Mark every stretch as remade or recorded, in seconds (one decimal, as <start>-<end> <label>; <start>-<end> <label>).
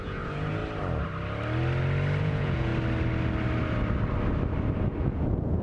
0.0-0.6 remade; 0.6-2.2 recorded; 2.2-2.7 remade; 2.7-5.0 recorded; 5.0-5.6 remade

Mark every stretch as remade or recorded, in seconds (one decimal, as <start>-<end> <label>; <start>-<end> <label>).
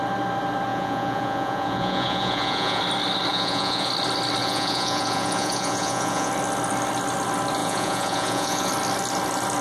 0.0-0.7 recorded; 0.7-2.8 remade; 2.8-3.3 recorded; 3.3-3.9 remade; 3.9-4.4 recorded; 4.4-6.3 remade; 6.3-7.6 recorded; 7.6-8.7 remade; 8.7-9.6 recorded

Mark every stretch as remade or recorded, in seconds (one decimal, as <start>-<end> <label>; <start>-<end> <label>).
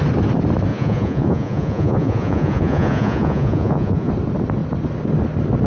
0.0-0.7 recorded; 0.7-4.1 remade; 4.1-5.7 recorded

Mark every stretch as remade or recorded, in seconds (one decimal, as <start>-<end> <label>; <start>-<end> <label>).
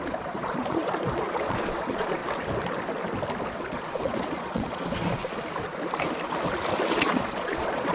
0.0-2.2 remade; 2.2-3.4 recorded; 3.4-5.2 remade; 5.2-6.9 recorded; 6.9-7.9 remade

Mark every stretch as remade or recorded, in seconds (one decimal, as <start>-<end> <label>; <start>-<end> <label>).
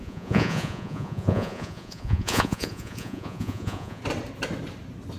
0.0-4.0 remade; 4.0-5.2 recorded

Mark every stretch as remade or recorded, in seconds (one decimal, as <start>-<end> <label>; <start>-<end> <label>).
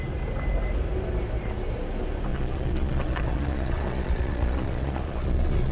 0.0-2.3 recorded; 2.3-5.7 remade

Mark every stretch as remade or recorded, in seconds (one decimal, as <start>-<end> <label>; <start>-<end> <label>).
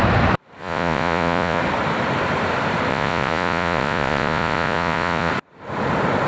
0.0-0.6 recorded; 0.6-1.6 remade; 1.6-2.9 recorded; 2.9-5.3 remade; 5.3-6.3 recorded